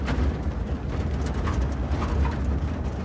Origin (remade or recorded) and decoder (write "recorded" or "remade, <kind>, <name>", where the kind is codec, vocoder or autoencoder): recorded